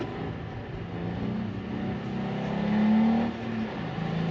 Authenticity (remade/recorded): recorded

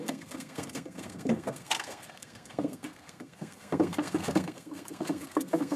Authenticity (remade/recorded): remade